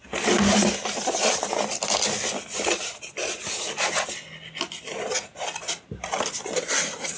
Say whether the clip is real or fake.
real